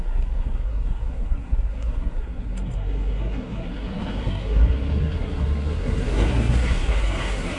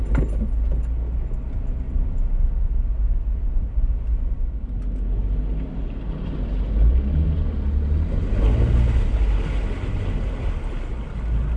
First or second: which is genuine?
second